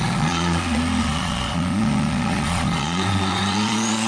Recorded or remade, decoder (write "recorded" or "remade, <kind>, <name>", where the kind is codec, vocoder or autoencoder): remade, vocoder, Vocos